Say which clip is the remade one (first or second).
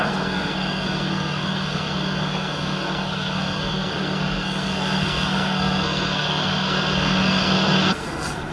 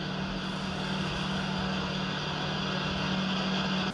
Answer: first